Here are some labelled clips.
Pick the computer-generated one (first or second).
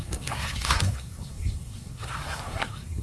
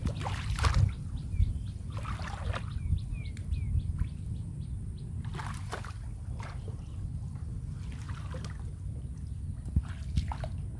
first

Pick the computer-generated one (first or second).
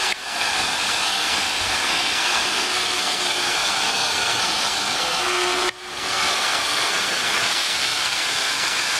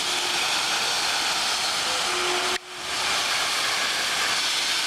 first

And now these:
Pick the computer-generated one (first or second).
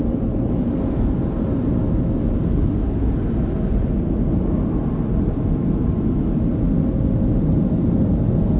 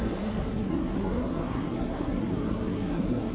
second